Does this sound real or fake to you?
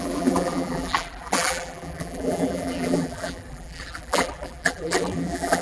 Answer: fake